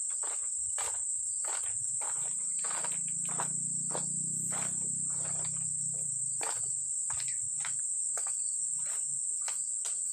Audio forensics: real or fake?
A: real